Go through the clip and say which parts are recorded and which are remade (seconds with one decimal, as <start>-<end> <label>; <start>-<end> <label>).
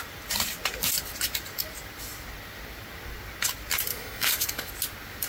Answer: 0.0-3.9 recorded; 3.9-4.7 remade; 4.7-5.3 recorded